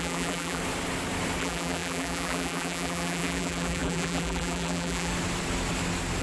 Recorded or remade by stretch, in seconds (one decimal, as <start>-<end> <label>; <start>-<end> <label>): 0.0-0.6 remade; 0.6-1.4 recorded; 1.4-5.1 remade; 5.1-6.2 recorded